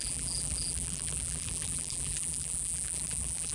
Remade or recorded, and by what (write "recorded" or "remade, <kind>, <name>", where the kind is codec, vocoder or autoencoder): remade, vocoder, BigVGAN v2